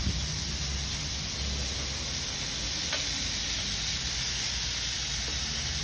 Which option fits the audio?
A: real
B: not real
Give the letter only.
A